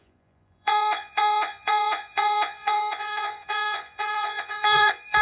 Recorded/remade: remade